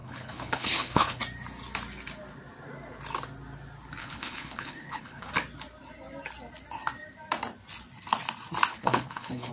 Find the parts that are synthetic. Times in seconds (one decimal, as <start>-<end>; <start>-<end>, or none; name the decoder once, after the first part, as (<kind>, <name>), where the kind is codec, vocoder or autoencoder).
0.0-1.2 (codec, HILCodec); 4.0-5.3; 8.7-9.5

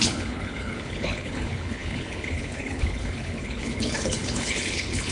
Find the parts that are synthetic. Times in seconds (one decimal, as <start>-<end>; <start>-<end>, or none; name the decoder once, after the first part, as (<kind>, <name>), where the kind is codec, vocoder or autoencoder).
0.0-5.1 (codec, HILCodec)

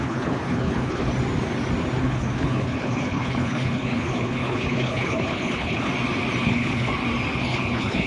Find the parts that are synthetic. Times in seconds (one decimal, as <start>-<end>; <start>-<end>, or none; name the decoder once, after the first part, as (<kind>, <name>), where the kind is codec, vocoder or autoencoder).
0.0-1.1 (codec, HILCodec); 2.0-5.9; 6.4-6.9; 7.4-8.1

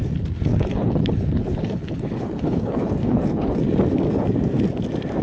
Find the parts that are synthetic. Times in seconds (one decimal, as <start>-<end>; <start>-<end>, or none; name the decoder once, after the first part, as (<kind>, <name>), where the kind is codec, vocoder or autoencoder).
0.5-3.6 (codec, HILCodec)

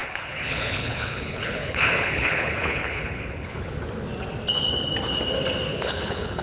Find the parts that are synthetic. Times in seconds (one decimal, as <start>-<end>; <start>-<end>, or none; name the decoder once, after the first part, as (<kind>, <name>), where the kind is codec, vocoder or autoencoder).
0.0-3.8 (codec, HILCodec); 5.7-6.4